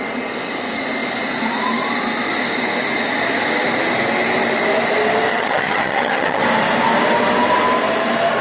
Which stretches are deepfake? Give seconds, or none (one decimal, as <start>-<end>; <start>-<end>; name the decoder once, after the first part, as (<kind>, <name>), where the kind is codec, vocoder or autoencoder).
5.3-6.4 (vocoder, HiFi-GAN)